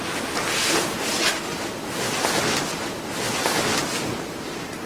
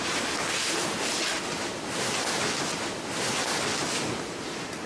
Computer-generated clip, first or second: second